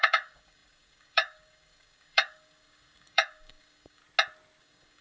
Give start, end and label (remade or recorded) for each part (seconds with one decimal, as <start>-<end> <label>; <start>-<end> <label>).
0.0-4.0 remade; 4.0-4.6 recorded; 4.6-5.0 remade